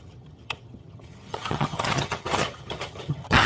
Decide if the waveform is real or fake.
fake